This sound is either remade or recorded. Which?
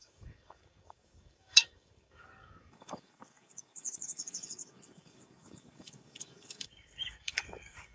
remade